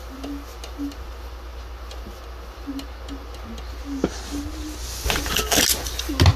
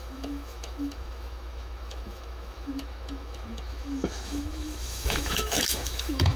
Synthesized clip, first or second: second